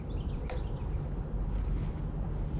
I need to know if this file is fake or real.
real